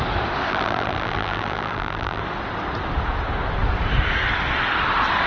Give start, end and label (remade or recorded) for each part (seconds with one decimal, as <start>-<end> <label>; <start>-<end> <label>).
0.0-0.5 recorded; 0.5-2.2 remade; 2.2-5.3 recorded